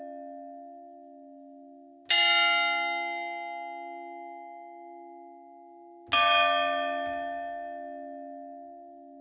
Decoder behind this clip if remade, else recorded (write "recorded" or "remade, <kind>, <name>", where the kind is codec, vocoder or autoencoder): recorded